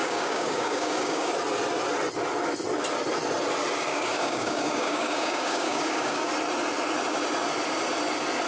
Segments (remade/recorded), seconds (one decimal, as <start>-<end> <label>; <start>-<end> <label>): 0.0-1.3 remade; 1.3-3.9 recorded; 3.9-6.3 remade; 6.3-8.5 recorded